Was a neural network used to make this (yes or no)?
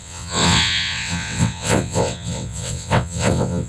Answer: yes